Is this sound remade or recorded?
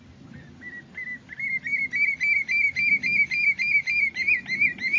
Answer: recorded